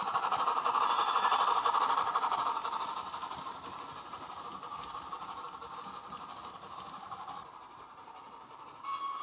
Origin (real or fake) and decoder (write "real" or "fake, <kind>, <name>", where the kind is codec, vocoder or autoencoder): fake, vocoder, BigVGAN v2